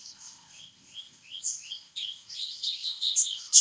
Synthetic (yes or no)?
yes